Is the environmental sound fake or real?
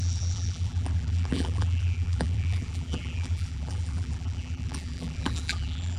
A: fake